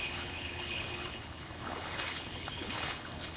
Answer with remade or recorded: remade